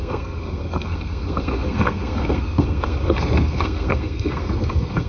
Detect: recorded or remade remade